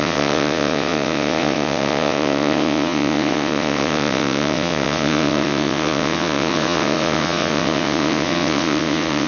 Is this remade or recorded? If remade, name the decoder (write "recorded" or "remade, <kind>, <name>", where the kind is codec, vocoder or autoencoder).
remade, vocoder, WaveNeXt